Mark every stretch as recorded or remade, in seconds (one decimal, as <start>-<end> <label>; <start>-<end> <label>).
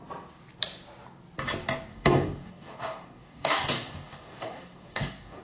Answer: 0.0-1.9 recorded; 1.9-5.4 remade